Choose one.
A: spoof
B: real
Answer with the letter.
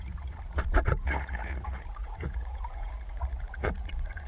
A